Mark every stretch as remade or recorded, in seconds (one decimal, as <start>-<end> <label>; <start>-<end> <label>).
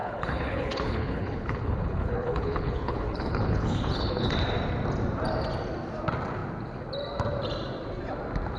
0.0-4.3 remade; 4.3-8.6 recorded